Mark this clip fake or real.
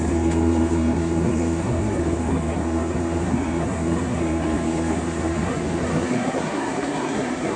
fake